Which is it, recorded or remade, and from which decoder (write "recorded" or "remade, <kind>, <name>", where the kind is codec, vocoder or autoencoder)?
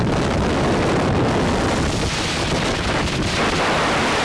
recorded